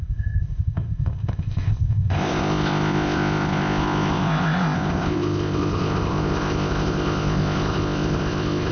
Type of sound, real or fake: fake